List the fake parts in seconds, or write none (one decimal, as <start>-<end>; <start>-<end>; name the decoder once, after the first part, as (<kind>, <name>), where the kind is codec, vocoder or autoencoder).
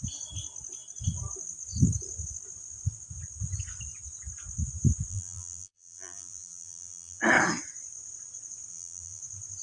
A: 5.1-7.2 (vocoder, BigVGAN v2); 8.7-9.2